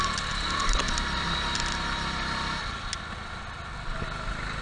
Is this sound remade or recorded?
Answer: recorded